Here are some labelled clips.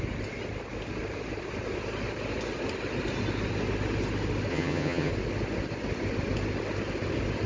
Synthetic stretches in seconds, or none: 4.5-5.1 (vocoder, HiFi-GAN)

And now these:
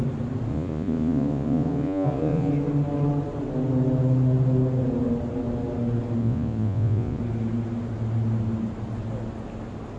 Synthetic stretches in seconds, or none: 0.5-2.5 (vocoder, Vocos); 6.2-7.2

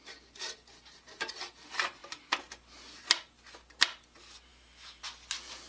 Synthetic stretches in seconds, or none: 4.5-5.0 (autoencoder, DAC-VAE)